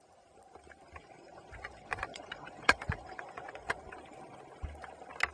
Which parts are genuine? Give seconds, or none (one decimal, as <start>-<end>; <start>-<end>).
0.0-1.0; 3.8-5.3